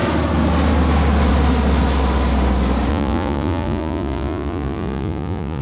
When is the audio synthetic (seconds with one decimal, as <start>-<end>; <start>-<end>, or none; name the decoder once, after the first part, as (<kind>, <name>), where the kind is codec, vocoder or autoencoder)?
2.9-5.6 (vocoder, Vocos)